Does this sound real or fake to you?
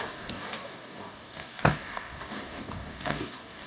fake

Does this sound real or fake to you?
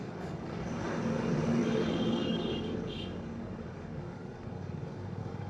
fake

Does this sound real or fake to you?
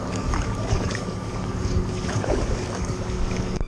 fake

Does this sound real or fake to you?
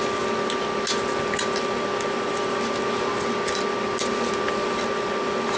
real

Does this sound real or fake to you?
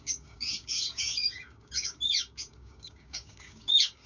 fake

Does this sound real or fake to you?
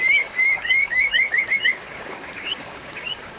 fake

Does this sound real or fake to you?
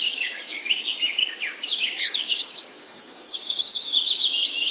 fake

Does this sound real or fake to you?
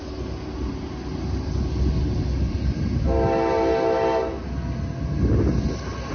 real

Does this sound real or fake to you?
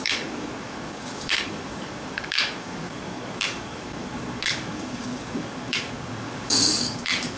fake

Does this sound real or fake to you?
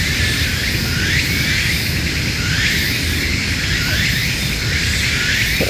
real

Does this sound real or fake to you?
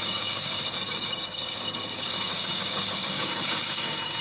fake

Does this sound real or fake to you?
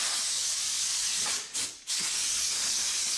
fake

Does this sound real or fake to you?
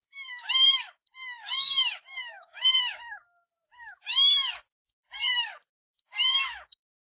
fake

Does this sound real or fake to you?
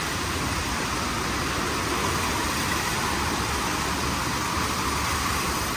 real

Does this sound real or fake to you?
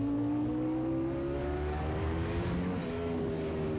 fake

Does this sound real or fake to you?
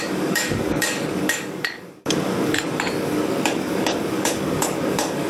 fake